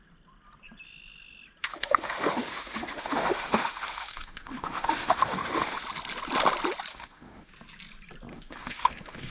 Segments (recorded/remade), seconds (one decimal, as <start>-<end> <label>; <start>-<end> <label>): 0.0-1.6 recorded; 1.6-5.8 remade; 5.8-6.9 recorded; 6.9-7.5 remade; 7.5-8.3 recorded; 8.3-9.3 remade